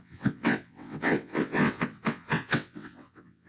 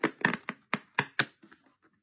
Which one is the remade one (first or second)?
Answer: first